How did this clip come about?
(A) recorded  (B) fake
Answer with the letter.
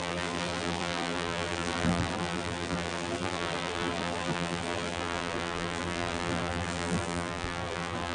B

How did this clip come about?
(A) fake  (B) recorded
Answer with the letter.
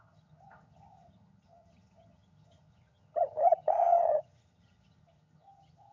A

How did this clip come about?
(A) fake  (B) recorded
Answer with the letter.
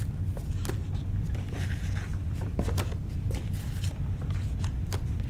B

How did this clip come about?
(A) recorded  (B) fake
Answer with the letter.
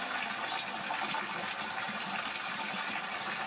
A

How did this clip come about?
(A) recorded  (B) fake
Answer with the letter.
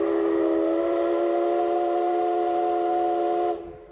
A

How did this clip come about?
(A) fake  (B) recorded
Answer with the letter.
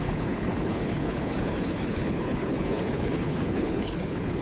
A